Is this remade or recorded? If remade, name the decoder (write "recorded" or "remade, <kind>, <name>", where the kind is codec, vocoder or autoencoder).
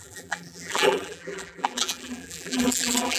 remade, vocoder, BigVGAN v2